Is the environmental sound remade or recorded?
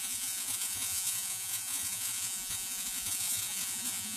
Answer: remade